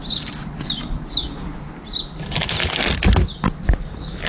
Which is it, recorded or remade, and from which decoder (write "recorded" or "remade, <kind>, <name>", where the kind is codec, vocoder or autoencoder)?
recorded